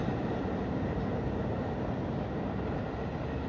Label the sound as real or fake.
real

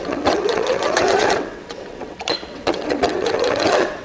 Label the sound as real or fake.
fake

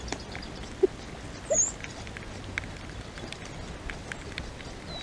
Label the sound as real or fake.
real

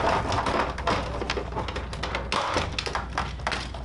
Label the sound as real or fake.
real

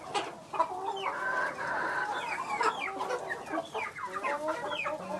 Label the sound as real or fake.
real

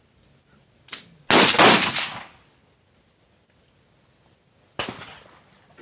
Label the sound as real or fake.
real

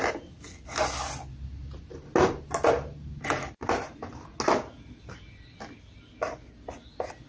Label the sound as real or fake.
real